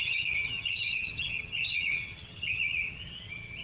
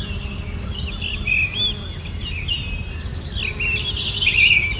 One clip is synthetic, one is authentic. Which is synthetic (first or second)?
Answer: first